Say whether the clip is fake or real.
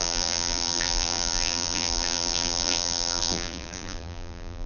fake